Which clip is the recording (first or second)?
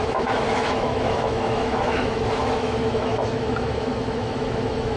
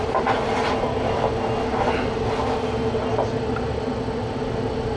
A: second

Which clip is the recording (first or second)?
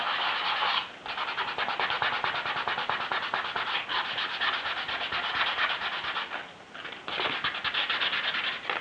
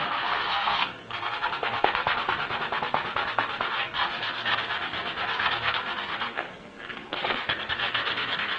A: first